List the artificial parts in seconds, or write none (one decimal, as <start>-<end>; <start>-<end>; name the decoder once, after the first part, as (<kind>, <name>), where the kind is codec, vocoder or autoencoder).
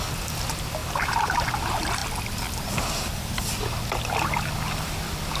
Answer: none